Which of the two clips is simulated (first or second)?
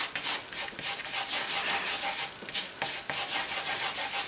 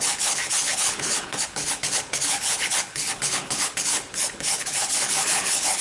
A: second